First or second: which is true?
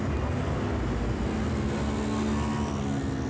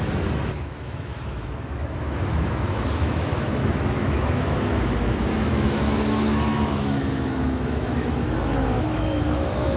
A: first